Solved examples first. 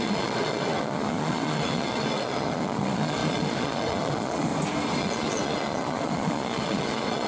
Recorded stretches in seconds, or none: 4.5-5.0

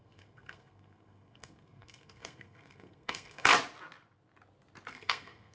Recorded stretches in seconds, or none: 3.5-4.9

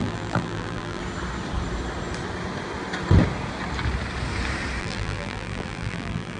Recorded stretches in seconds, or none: 1.0-4.8

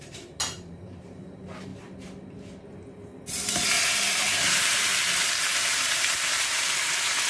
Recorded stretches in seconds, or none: 1.7-2.7; 3.1-4.1; 4.9-5.4

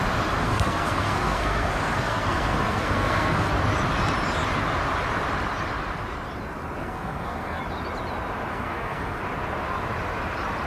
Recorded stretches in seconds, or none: 0.0-0.4; 3.5-6.8; 7.6-8.5; 9.2-10.7

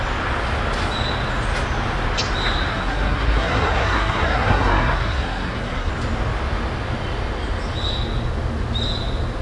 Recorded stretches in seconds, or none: 0.0-2.7; 5.9-9.4

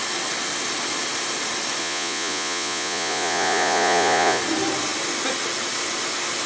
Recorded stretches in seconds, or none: 0.0-1.8; 4.4-6.5